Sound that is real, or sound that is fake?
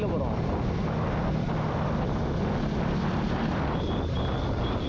real